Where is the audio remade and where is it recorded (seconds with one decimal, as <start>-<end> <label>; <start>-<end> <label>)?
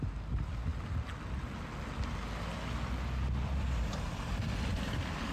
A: 0.0-5.3 recorded